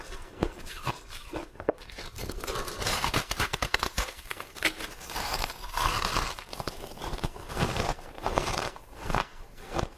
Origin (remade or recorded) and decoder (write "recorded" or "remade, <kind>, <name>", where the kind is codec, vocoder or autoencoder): remade, codec, SNAC